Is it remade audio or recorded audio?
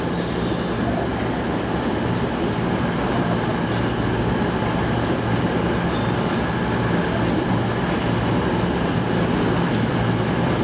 recorded